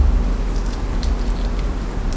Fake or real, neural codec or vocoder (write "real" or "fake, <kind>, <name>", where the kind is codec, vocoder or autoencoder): real